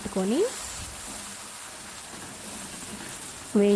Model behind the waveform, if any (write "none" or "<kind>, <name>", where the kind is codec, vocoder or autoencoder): none